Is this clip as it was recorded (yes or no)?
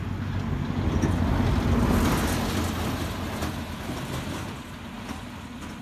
yes